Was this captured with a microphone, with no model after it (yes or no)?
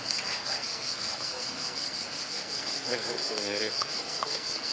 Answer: no